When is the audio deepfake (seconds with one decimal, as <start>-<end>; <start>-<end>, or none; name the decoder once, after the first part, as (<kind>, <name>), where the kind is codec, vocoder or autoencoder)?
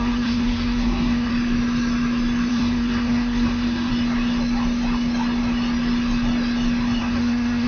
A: 0.0-1.3 (codec, SNAC); 2.5-3.9; 7.0-7.7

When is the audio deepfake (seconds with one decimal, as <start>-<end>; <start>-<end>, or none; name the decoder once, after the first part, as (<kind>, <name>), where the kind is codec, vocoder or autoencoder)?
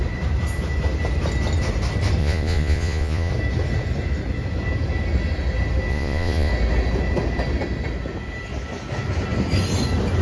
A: 2.2-3.3 (vocoder, Vocos); 5.9-6.5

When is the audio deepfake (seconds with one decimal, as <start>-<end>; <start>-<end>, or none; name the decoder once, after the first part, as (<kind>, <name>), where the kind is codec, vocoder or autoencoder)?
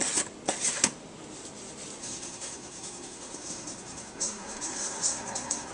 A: 2.0-5.7 (codec, SNAC)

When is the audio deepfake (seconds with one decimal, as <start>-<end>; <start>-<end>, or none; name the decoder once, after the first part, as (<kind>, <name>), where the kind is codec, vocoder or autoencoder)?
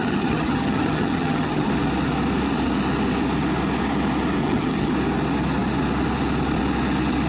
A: 0.0-1.7 (vocoder, HiFi-GAN); 4.4-4.9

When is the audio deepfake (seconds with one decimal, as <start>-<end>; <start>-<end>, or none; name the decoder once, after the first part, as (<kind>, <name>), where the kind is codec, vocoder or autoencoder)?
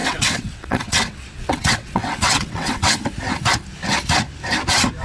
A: 0.0-3.0 (vocoder, WaveNeXt)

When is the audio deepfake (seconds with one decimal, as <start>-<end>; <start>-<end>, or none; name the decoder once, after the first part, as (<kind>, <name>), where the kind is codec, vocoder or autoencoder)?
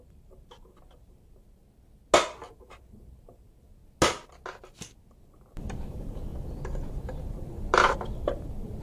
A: 0.0-1.6 (vocoder, BigVGAN v2); 2.5-3.8; 5.2-6.3; 7.3-8.8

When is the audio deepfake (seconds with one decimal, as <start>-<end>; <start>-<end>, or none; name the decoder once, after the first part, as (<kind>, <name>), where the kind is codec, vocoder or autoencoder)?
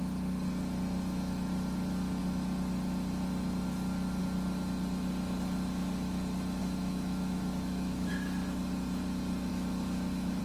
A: 6.6-8.1 (autoencoder, DAC-VAE); 9.5-10.4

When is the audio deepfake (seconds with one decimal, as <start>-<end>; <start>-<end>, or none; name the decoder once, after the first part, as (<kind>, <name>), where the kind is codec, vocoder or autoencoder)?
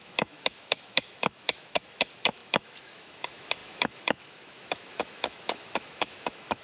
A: 0.0-6.6 (autoencoder, DAC-VAE)